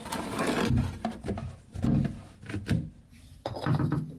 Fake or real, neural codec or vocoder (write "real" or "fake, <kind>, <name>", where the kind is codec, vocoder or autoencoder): real